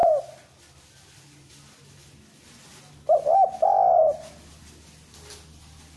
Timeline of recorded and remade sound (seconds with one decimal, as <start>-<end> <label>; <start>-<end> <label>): 0.0-6.0 recorded